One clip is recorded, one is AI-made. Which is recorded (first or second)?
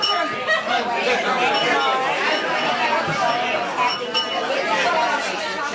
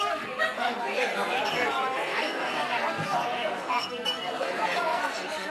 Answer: first